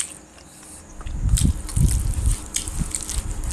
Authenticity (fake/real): real